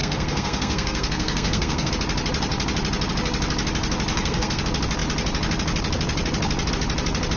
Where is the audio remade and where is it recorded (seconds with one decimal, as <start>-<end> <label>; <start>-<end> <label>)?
0.0-1.9 remade; 1.9-4.1 recorded; 4.1-4.6 remade; 4.6-7.4 recorded